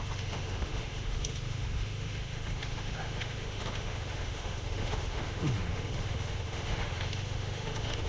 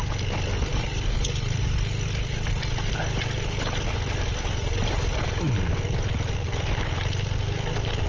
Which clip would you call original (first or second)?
second